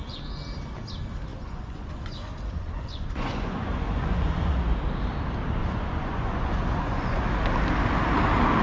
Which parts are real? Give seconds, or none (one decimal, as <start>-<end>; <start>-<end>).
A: 0.0-1.3; 4.6-5.6; 7.2-8.6